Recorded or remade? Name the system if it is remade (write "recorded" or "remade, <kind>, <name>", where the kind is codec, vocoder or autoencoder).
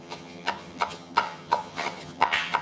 remade, vocoder, HiFi-GAN